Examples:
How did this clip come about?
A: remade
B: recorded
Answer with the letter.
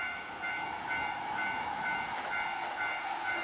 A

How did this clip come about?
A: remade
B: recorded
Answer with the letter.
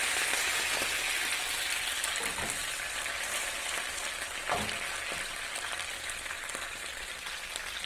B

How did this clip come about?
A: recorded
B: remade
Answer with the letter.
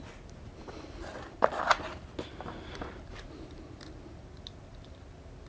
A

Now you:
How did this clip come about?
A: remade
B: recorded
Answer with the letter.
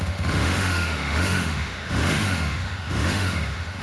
A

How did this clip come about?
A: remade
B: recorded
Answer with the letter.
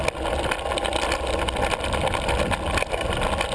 B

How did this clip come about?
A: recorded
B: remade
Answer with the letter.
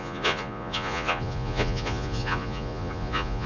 B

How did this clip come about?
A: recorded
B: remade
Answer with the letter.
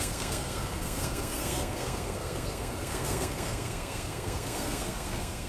B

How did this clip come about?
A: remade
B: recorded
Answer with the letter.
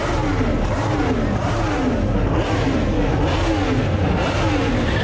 B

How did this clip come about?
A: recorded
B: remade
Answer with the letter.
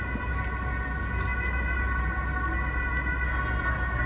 A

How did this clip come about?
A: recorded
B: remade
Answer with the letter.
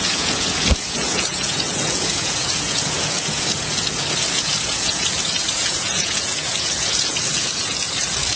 B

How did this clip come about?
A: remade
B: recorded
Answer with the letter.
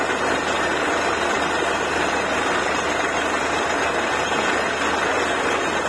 B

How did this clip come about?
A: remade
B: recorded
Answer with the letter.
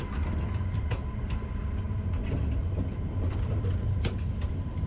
B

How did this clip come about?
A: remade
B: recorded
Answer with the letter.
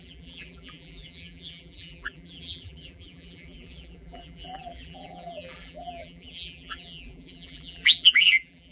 A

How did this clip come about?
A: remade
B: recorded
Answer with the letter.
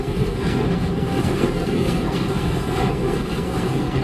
A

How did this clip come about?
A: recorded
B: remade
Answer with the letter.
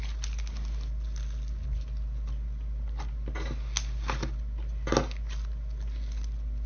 A